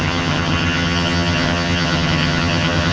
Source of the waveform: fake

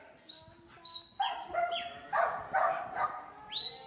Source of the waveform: real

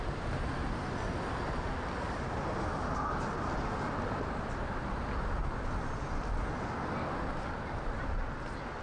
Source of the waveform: real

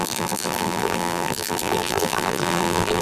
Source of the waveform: fake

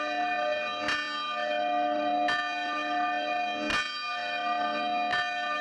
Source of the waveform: real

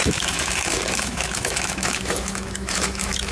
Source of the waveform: fake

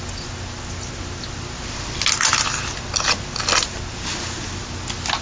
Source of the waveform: real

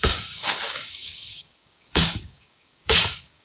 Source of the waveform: fake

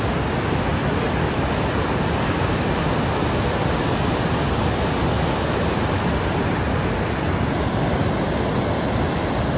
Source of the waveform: real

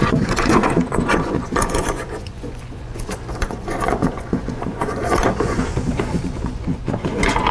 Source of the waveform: fake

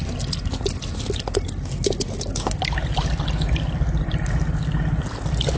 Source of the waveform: real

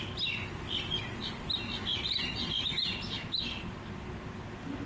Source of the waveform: real